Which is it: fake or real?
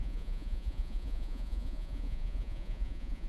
fake